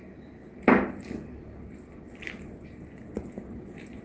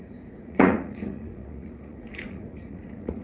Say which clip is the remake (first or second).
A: second